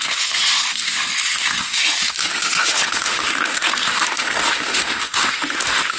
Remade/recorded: remade